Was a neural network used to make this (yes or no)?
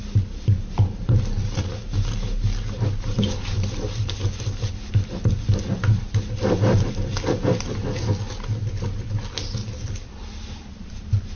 no